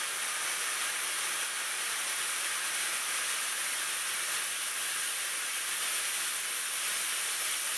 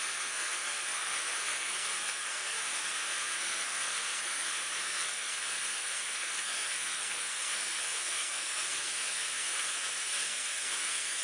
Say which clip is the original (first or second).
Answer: first